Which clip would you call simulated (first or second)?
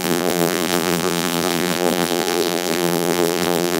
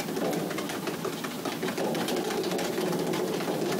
first